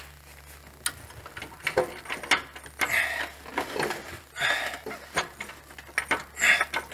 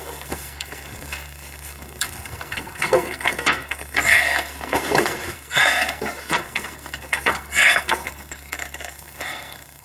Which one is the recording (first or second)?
first